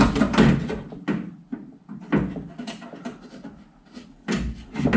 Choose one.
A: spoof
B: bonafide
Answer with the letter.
B